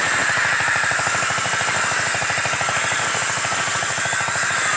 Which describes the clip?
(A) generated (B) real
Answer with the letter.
B